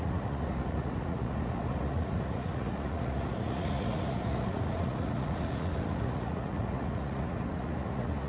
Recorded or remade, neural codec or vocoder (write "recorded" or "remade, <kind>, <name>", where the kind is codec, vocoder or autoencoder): remade, vocoder, Vocos